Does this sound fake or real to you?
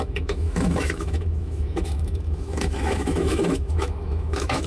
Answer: fake